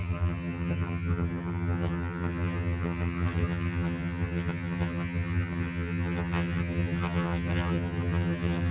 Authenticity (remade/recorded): remade